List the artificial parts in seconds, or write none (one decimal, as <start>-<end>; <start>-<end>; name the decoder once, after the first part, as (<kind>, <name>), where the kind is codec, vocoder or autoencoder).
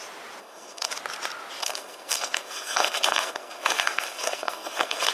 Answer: 0.4-0.9 (codec, SNAC); 1.6-5.1